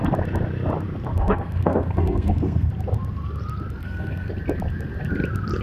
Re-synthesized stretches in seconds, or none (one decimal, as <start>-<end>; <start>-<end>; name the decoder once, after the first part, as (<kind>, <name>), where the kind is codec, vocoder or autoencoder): 1.1-2.7 (codec, SNAC); 3.8-4.3